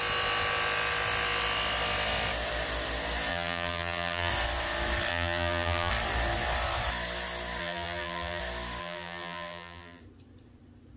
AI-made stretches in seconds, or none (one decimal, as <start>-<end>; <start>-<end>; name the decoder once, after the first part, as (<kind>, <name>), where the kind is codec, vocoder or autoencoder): 3.3-4.3 (vocoder, BigVGAN v2); 5.1-5.9; 7.6-8.4; 8.8-10.0